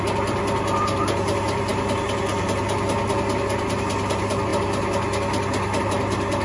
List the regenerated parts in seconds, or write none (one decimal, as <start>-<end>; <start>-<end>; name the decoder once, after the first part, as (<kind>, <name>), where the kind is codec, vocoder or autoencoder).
none